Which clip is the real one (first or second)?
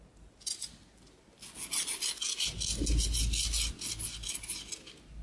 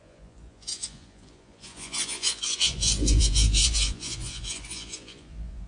first